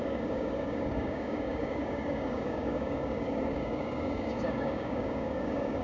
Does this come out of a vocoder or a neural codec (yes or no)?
yes